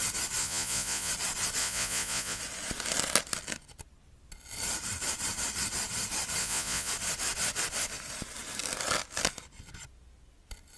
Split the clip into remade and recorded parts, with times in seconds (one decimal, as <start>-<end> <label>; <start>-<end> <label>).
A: 0.0-0.4 recorded; 0.4-1.1 remade; 1.1-1.6 recorded; 1.6-2.4 remade; 2.4-6.4 recorded; 6.4-6.9 remade; 6.9-10.8 recorded